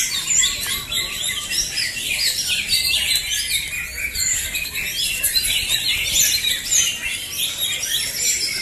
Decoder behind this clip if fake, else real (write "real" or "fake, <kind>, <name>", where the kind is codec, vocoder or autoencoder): real